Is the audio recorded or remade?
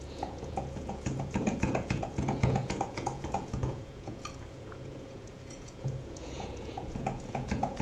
remade